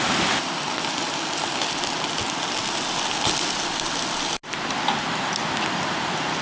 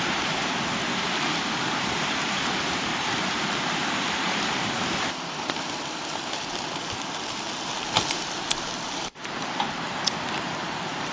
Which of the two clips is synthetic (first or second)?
second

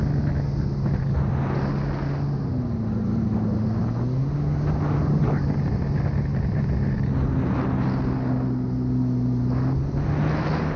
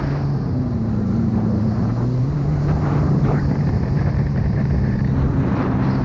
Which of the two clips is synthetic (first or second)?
second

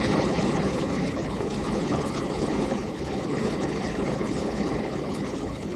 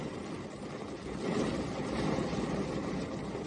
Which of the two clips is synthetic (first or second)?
first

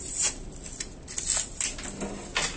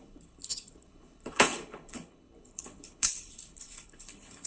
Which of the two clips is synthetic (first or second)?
second